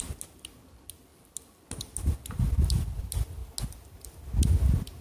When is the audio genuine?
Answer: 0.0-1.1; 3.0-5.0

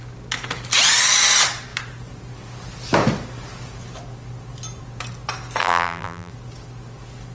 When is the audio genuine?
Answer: 0.0-5.6; 6.3-7.3

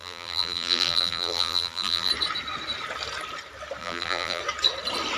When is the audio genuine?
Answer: 2.1-3.8; 4.4-5.2

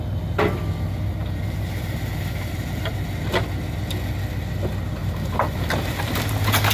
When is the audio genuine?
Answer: 0.0-1.2; 3.1-5.0; 6.2-6.7

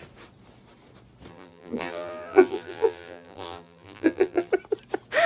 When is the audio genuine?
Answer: 0.0-1.3; 4.5-5.3

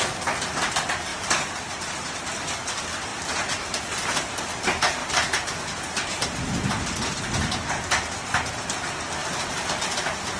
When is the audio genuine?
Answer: 0.0-1.1; 2.1-5.0; 7.5-10.4

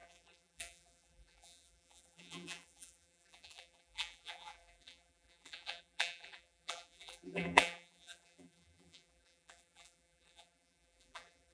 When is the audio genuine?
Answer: none